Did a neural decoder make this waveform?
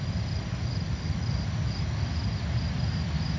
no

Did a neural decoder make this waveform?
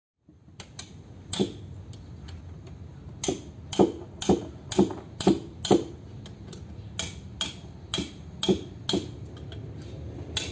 no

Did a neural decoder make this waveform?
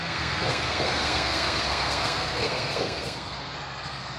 yes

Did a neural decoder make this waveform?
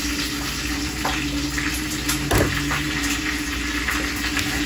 no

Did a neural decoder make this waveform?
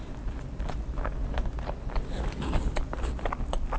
no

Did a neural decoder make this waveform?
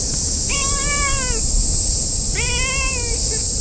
no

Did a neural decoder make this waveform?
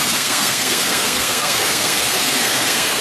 yes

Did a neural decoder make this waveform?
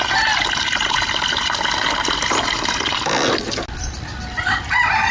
no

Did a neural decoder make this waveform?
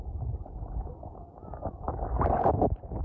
no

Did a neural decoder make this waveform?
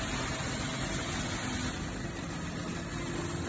no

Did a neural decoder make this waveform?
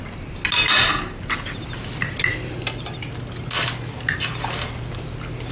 no